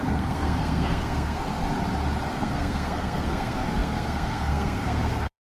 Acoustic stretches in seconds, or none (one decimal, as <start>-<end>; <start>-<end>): 1.6-2.3